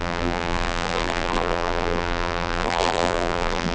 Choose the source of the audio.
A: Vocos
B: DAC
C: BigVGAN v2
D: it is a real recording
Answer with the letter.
C